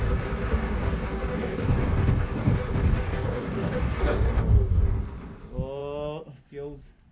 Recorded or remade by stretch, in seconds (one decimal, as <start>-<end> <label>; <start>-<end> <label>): 0.0-0.5 recorded; 0.5-4.8 remade; 4.8-7.1 recorded